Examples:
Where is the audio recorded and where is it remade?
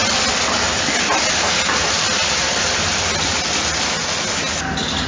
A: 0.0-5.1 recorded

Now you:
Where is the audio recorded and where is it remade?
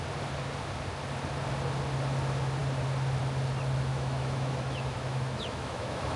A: 0.0-3.9 recorded; 3.9-6.2 remade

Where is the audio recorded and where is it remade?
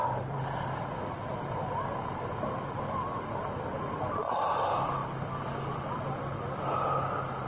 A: 0.0-0.8 remade; 0.8-3.4 recorded; 3.4-4.4 remade; 4.4-7.5 recorded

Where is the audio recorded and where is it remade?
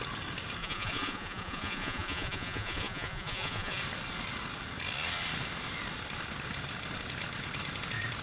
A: 0.0-0.6 recorded; 0.6-3.8 remade; 3.8-8.2 recorded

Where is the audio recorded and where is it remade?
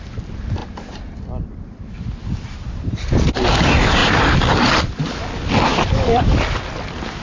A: 0.0-0.6 recorded; 0.6-1.9 remade; 1.9-5.7 recorded; 5.7-6.4 remade; 6.4-7.2 recorded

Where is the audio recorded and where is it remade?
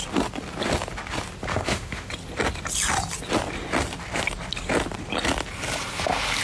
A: 0.0-1.5 recorded; 1.5-2.1 remade; 2.1-6.4 recorded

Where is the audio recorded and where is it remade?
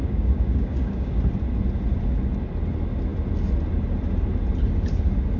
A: 0.0-1.2 remade; 1.2-5.4 recorded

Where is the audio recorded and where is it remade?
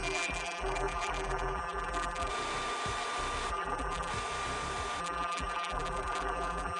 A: 0.0-2.3 remade; 2.3-3.5 recorded; 3.5-4.1 remade; 4.1-5.0 recorded; 5.0-6.8 remade